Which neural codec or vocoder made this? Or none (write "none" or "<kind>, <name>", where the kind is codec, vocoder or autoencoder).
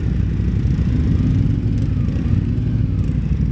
none